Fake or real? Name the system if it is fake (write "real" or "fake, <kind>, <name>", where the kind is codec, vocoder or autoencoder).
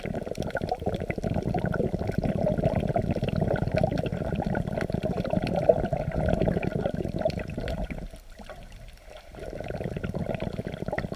real